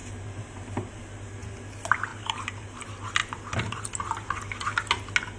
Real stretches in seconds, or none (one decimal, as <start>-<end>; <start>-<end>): 1.0-2.1; 2.8-5.4